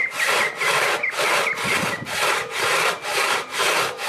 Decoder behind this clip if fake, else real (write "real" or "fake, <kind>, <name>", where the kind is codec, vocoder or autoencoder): real